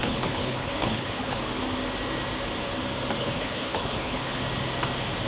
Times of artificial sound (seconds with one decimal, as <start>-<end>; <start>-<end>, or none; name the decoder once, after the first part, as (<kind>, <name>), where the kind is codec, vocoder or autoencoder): 0.0-1.4 (codec, HILCodec); 3.2-4.4